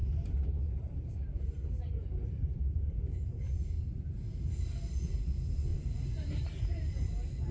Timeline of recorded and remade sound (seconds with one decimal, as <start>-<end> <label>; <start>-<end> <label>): 0.0-4.5 remade; 4.5-5.7 recorded; 5.7-7.1 remade; 7.1-7.5 recorded